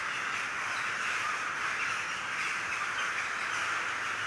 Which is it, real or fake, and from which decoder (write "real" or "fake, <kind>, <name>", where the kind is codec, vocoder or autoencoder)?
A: real